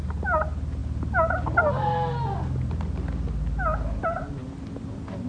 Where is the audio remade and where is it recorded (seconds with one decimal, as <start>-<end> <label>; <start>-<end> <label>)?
0.0-5.3 recorded